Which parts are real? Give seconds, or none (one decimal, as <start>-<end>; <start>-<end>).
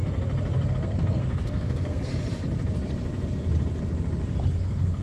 0.0-0.7; 2.1-4.5